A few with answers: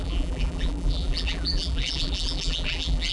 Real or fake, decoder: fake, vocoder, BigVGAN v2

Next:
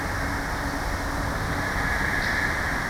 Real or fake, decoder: real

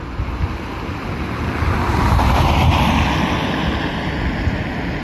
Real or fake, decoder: real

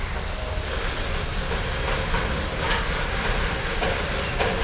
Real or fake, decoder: fake, vocoder, BigVGAN v2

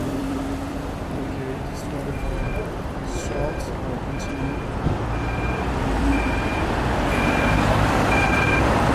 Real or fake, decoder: fake, vocoder, BigVGAN v2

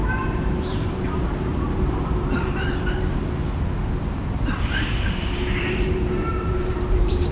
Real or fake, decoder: fake, vocoder, BigVGAN v2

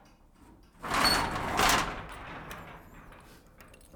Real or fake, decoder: real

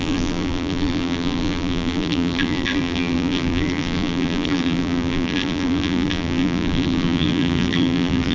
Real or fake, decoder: fake, vocoder, BigVGAN v2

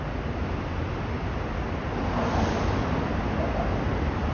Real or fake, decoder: real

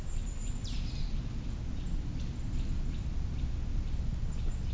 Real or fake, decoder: real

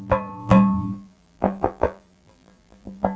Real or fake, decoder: fake, vocoder, BigVGAN v2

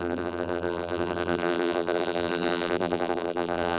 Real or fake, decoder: fake, vocoder, BigVGAN v2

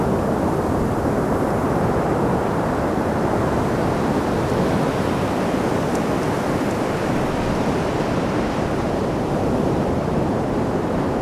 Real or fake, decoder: real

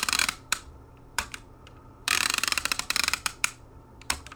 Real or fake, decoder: fake, vocoder, BigVGAN v2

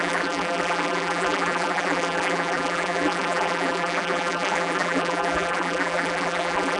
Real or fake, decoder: fake, vocoder, BigVGAN v2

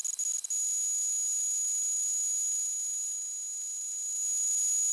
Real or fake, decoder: real